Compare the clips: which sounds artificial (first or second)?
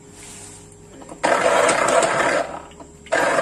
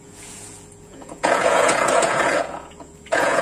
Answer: second